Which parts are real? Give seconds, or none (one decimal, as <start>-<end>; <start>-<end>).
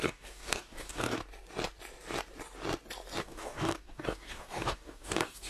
1.2-3.2